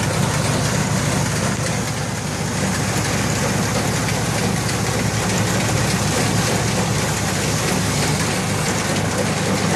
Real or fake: real